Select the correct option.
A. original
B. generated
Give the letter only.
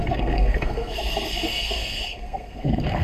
B